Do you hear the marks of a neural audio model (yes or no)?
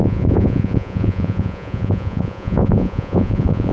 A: yes